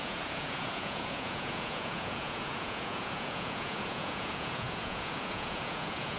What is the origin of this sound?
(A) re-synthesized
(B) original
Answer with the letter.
A